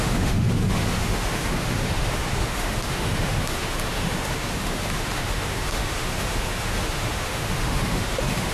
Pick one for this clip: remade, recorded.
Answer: remade